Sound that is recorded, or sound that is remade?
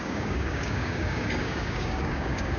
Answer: remade